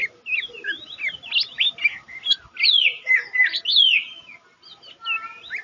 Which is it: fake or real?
real